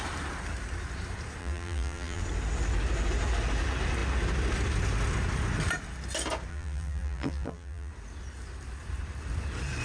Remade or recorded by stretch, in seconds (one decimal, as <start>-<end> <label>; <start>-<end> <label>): 0.0-1.4 recorded; 1.4-2.2 remade; 2.2-6.5 recorded; 6.5-7.9 remade; 7.9-9.8 recorded